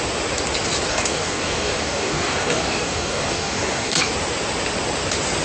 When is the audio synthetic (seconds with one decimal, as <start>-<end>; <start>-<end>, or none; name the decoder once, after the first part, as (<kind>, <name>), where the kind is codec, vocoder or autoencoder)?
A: 0.9-4.1 (codec, DAC)